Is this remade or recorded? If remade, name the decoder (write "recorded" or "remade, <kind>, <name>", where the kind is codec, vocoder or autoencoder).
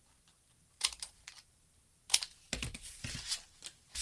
recorded